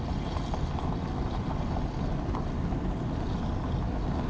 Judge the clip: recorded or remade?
recorded